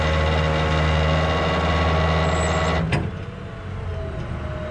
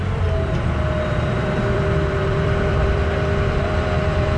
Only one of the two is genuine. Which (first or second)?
first